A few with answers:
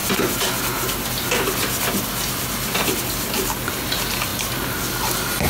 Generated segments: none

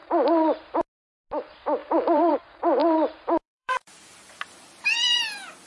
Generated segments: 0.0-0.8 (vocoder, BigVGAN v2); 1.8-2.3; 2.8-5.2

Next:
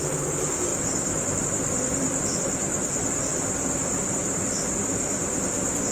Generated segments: none